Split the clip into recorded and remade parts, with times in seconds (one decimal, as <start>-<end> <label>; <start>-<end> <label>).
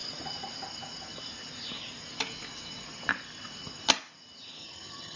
0.0-4.6 recorded; 4.6-5.2 remade